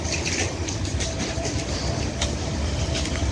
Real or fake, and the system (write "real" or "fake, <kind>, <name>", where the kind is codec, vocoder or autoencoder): fake, vocoder, BigVGAN v2